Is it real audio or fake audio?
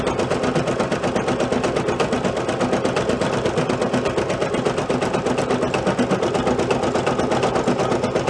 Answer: real